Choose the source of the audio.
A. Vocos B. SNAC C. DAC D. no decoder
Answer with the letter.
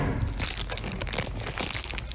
D